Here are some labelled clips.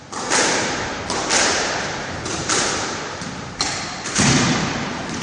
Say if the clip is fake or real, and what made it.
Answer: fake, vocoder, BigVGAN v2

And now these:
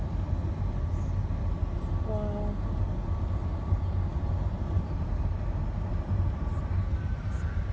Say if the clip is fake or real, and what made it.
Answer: real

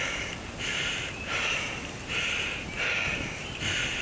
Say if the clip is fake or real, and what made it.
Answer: real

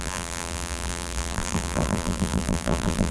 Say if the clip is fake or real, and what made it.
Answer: fake, vocoder, BigVGAN v2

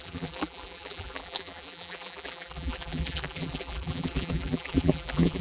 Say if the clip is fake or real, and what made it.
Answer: fake, vocoder, BigVGAN v2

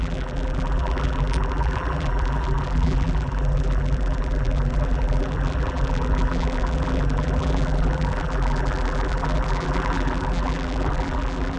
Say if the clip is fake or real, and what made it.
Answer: fake, vocoder, BigVGAN v2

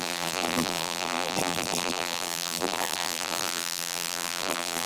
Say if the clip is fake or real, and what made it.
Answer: fake, vocoder, BigVGAN v2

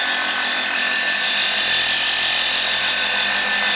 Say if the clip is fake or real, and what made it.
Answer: real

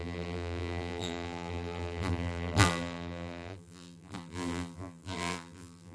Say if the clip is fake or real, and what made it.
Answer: fake, vocoder, BigVGAN v2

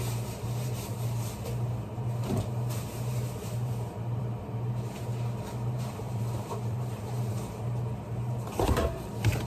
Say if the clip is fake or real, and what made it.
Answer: fake, vocoder, BigVGAN v2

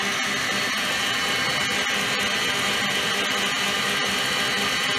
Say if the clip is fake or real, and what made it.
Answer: real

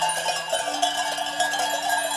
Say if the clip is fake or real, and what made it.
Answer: real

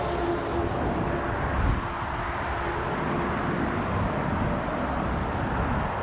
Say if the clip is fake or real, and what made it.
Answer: real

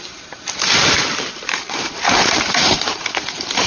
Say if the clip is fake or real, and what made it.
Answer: fake, vocoder, BigVGAN v2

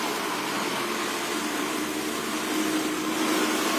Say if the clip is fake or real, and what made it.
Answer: real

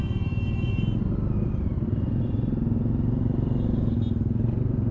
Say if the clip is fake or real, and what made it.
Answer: real